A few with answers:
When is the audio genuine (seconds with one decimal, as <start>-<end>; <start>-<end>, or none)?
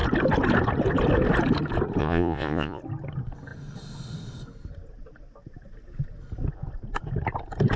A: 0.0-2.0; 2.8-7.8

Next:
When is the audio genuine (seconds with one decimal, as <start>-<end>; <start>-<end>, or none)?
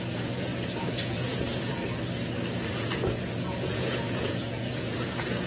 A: 1.8-2.7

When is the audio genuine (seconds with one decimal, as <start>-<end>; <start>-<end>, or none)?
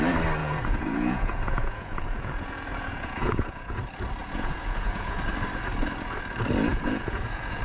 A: 0.0-0.4; 3.8-4.2; 5.2-6.7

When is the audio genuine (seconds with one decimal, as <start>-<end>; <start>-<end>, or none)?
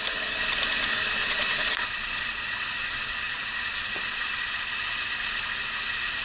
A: 0.0-1.2; 4.9-6.2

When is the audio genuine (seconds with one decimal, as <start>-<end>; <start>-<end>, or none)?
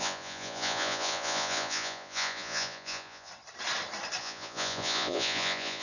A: 3.3-4.2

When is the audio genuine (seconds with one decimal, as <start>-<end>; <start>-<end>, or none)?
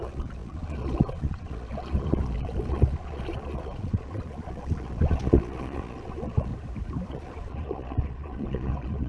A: 6.5-7.1